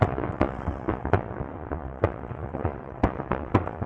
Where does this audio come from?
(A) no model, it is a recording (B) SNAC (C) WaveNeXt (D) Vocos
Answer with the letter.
C